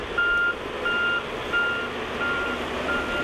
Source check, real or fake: real